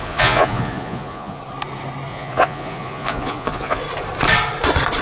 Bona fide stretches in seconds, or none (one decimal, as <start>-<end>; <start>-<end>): 1.4-2.1; 3.8-5.0